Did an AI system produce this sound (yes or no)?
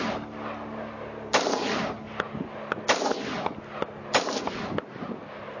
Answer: no